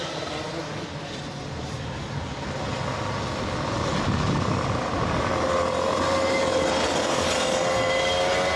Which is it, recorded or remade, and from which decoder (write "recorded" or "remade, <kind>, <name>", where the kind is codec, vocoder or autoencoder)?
recorded